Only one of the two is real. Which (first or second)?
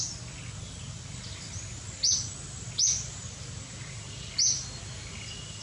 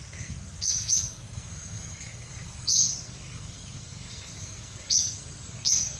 first